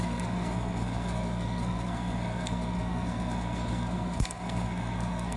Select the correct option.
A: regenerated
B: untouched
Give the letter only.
A